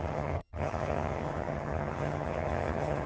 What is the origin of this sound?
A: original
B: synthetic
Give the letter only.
B